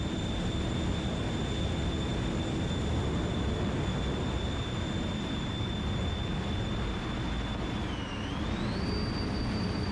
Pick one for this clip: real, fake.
real